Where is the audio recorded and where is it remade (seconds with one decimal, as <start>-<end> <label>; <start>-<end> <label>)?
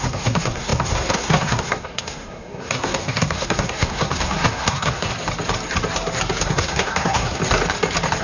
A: 0.0-5.1 remade; 5.1-6.4 recorded; 6.4-7.4 remade; 7.4-8.2 recorded